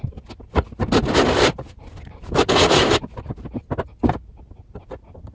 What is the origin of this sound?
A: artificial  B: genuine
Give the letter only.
B